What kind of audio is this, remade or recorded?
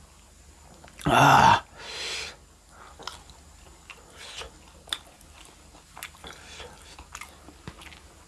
recorded